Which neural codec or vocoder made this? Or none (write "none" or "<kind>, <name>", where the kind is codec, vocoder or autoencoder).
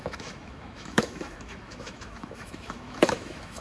autoencoder, DAC-VAE